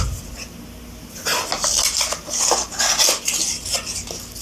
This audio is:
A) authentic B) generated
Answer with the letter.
A